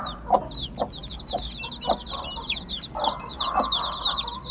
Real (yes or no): yes